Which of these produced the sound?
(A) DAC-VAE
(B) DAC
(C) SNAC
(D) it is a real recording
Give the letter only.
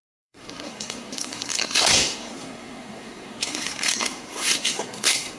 C